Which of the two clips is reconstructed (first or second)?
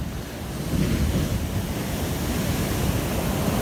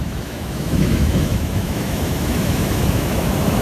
second